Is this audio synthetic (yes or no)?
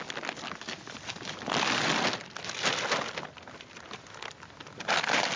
no